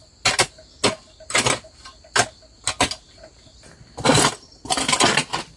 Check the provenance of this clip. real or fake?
real